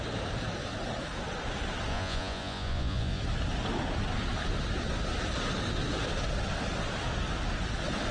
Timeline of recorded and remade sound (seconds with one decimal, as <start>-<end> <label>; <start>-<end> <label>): 0.0-1.9 recorded; 1.9-3.2 remade; 3.2-8.1 recorded